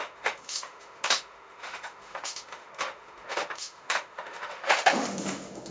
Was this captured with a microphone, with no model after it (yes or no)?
no